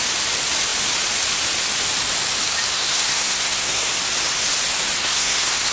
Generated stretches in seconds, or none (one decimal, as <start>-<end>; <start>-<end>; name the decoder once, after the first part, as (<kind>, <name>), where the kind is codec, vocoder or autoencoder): 2.7-3.9 (codec, SNAC); 5.0-5.7